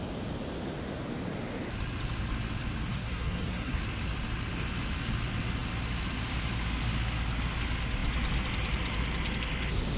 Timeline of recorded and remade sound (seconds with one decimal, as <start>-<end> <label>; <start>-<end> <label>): 0.0-2.9 recorded; 2.9-3.8 remade; 3.8-10.0 recorded